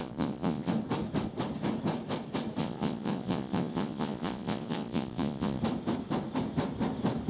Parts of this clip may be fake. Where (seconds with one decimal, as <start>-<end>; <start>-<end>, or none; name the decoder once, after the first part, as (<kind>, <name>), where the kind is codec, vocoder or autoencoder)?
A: 0.0-0.7 (vocoder, Vocos); 2.6-5.6